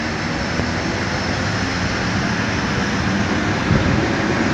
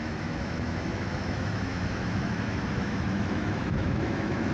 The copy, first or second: second